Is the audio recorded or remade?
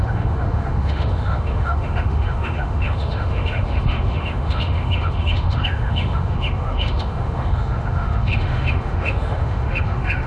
remade